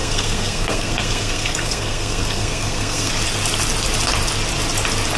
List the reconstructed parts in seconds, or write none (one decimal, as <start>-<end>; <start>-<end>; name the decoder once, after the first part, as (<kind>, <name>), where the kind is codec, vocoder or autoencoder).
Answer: 0.0-3.1 (codec, SNAC)

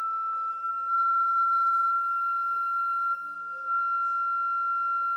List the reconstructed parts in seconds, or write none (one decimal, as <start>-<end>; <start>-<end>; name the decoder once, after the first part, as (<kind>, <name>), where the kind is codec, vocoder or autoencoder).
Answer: 0.7-3.8 (codec, SNAC)

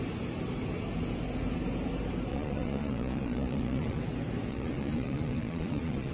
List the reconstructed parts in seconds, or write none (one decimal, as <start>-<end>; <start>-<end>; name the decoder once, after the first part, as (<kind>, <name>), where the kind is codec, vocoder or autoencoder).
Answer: 2.3-4.0 (vocoder, Vocos); 4.5-6.1

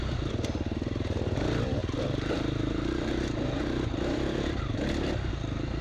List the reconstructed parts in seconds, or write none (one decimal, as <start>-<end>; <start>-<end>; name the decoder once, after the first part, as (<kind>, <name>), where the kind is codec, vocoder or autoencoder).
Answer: 1.8-5.3 (vocoder, BigVGAN v2)

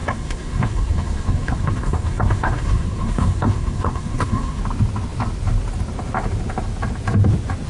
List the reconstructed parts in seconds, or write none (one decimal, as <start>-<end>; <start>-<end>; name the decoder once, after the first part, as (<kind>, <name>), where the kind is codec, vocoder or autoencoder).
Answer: 0.0-4.6 (codec, SNAC)

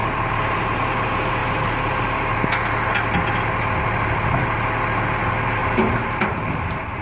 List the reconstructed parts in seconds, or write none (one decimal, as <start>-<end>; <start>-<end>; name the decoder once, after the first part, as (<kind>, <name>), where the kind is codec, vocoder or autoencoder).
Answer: 0.0-0.8 (vocoder, BigVGAN v2); 1.4-2.4; 5.6-7.0

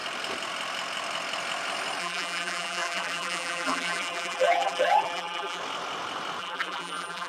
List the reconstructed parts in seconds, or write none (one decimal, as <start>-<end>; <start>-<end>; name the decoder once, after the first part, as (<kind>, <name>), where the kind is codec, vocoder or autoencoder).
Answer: 2.0-5.6 (vocoder, BigVGAN v2); 6.4-7.3